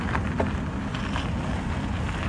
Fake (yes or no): no